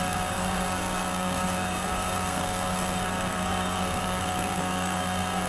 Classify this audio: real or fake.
fake